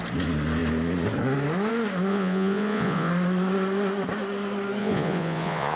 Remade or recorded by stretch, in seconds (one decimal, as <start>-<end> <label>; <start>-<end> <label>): 0.0-2.1 recorded; 2.1-3.1 remade; 3.1-4.8 recorded; 4.8-5.8 remade